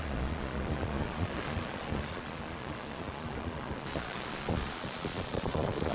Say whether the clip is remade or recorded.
remade